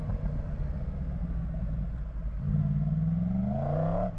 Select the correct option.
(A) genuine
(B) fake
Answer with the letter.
A